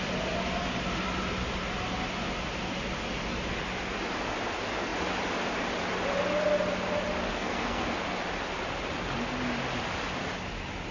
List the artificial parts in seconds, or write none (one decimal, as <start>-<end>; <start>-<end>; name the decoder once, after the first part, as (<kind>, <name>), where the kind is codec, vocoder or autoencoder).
7.3-7.9 (codec, SNAC)